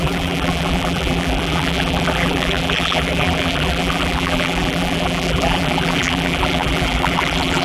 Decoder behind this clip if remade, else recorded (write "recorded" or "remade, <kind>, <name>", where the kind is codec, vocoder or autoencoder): remade, vocoder, BigVGAN v2